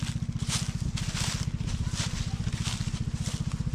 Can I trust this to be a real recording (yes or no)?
yes